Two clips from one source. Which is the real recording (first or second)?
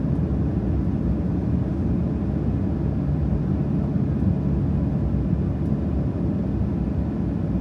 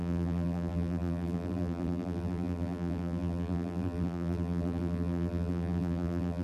first